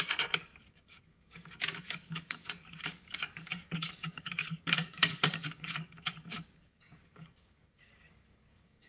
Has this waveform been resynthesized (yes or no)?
yes